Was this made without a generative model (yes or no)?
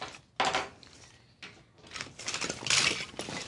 yes